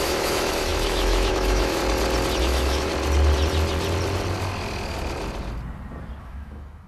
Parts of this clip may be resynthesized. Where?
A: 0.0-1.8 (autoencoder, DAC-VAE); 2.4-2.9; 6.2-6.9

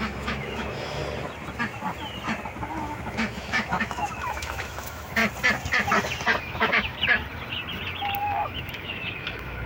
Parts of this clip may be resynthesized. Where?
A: 0.0-1.0 (autoencoder, DAC-VAE); 2.8-5.2; 6.4-6.9; 8.2-9.7

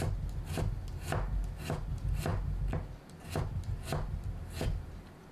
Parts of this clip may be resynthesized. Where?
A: none